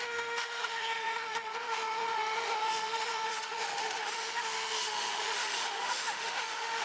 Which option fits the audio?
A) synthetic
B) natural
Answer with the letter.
A